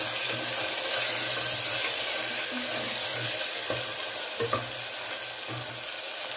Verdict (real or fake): real